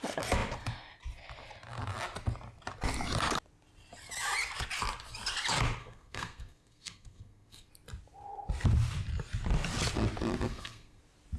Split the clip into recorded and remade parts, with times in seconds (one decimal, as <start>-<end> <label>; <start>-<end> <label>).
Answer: 0.0-5.8 recorded; 5.8-7.7 remade; 7.7-10.5 recorded; 10.5-11.0 remade; 11.0-11.4 recorded